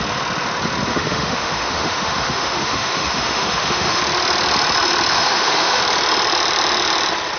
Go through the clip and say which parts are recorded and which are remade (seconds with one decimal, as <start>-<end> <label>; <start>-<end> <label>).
0.0-0.9 recorded; 0.9-4.0 remade; 4.0-5.1 recorded; 5.1-5.8 remade; 5.8-7.4 recorded